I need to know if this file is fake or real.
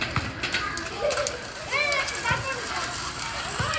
real